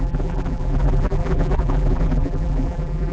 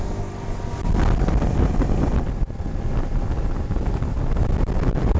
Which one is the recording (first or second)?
second